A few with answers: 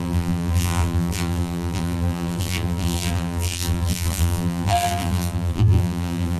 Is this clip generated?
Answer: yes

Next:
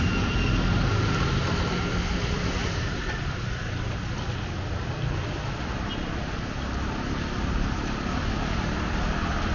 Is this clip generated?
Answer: no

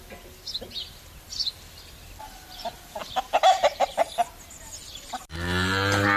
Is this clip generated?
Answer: no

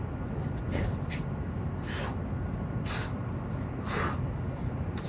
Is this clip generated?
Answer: no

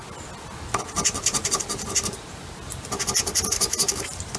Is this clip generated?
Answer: no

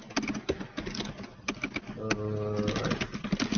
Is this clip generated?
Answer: no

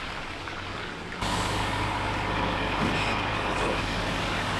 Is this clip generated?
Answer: yes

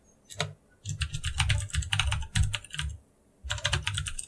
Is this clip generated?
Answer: no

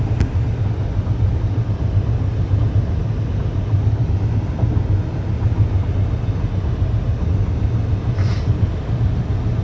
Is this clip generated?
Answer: no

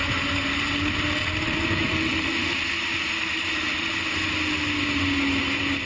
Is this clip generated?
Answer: no